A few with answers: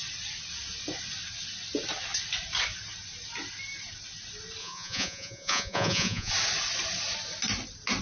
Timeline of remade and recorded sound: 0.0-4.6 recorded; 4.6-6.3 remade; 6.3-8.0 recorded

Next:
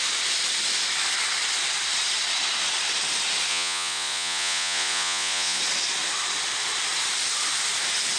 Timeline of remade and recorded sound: 0.0-3.5 recorded; 3.5-5.6 remade; 5.6-8.2 recorded

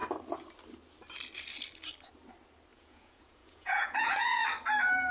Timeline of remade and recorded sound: 0.0-2.7 recorded; 2.7-4.4 remade; 4.4-5.1 recorded

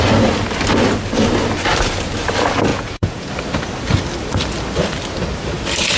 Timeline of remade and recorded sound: 0.0-2.7 recorded; 2.7-3.3 remade; 3.3-6.0 recorded

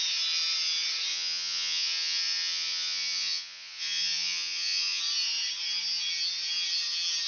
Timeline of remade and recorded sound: 0.0-1.1 recorded; 1.1-5.0 remade; 5.0-7.3 recorded

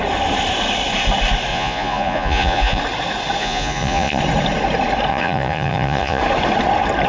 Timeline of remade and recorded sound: 0.0-1.5 recorded; 1.5-2.8 remade; 2.8-3.4 recorded; 3.4-4.2 remade; 4.2-5.1 recorded; 5.1-6.2 remade; 6.2-7.1 recorded

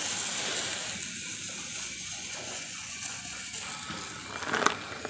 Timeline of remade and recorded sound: 0.0-1.7 recorded; 1.7-3.7 remade; 3.7-5.1 recorded

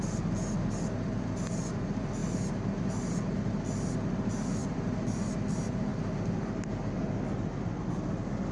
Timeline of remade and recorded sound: 0.0-8.5 recorded